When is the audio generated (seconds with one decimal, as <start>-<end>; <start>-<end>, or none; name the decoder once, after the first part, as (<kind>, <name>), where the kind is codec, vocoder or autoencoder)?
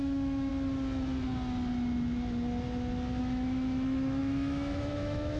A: 0.0-0.5 (autoencoder, DAC-VAE); 3.2-5.4